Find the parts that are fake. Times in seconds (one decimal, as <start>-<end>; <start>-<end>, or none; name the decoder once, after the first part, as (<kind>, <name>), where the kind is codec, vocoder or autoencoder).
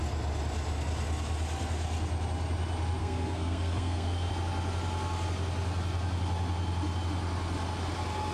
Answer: 3.0-4.3 (codec, SNAC)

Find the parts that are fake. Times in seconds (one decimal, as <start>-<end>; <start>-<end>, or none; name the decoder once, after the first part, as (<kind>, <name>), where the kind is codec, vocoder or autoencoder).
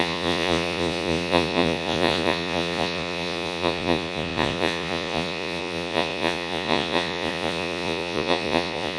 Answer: 0.0-9.0 (vocoder, Vocos)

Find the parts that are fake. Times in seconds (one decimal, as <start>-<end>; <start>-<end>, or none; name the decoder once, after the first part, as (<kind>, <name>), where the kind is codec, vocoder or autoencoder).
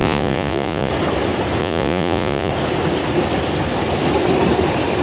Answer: 0.0-0.9 (vocoder, Vocos); 1.6-2.5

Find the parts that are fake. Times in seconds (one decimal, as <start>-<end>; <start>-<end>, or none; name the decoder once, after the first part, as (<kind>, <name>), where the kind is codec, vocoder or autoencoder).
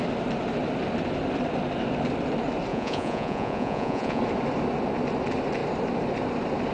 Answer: 2.7-4.2 (vocoder, Vocos)